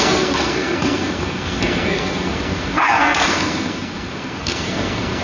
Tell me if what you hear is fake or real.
fake